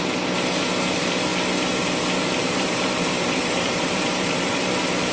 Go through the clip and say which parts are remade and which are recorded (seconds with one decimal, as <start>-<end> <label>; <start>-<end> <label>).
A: 0.0-2.4 recorded; 2.4-4.5 remade; 4.5-5.1 recorded